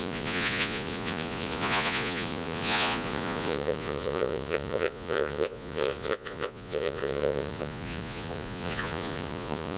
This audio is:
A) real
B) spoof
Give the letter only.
B